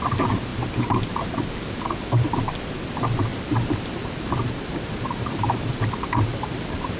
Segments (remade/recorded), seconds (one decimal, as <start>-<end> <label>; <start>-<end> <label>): 0.0-0.5 recorded; 0.5-2.3 remade; 2.3-3.3 recorded; 3.3-7.0 remade